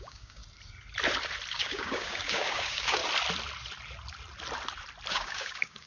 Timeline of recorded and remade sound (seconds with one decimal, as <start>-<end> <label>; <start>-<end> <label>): 0.0-0.4 remade; 0.4-1.5 recorded; 1.5-3.0 remade; 3.0-5.1 recorded; 5.1-5.9 remade